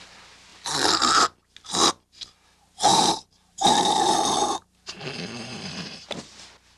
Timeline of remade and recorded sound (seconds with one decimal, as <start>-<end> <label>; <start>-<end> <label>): 0.0-2.9 recorded; 2.9-6.2 remade; 6.2-6.8 recorded